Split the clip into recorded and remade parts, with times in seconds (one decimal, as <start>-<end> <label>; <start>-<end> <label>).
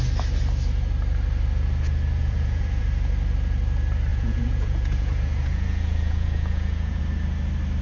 0.0-2.2 recorded; 2.2-2.8 remade; 2.8-4.1 recorded; 4.1-7.0 remade; 7.0-7.8 recorded